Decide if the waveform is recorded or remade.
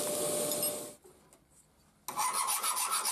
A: recorded